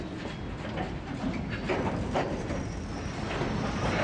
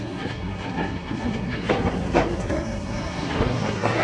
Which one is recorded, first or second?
first